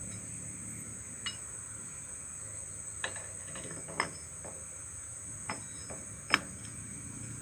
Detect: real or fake real